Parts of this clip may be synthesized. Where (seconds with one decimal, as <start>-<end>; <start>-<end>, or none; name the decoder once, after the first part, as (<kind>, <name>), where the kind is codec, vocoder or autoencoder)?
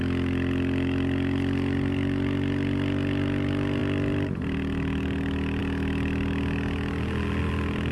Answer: none